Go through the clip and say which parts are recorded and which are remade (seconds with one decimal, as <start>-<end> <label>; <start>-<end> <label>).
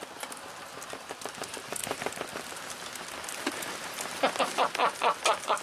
0.0-5.6 recorded